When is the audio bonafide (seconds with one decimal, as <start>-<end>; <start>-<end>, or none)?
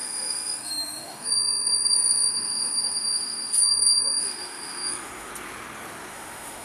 5.3-6.1